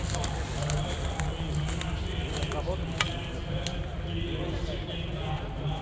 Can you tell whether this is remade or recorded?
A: recorded